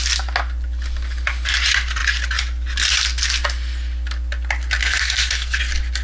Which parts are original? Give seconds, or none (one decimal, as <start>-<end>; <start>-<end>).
0.0-4.8; 5.6-6.0